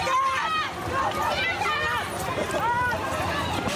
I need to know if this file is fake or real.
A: real